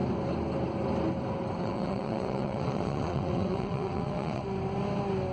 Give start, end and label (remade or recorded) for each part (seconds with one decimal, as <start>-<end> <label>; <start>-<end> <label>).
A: 0.0-1.6 recorded; 1.6-4.4 remade; 4.4-5.3 recorded